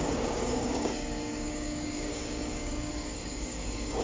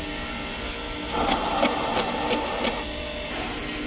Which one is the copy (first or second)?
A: first